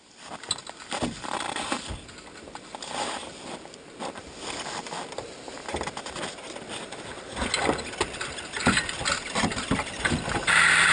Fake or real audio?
real